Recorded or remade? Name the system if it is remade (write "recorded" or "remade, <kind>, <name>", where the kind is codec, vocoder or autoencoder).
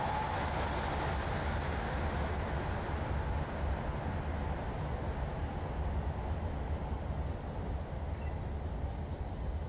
recorded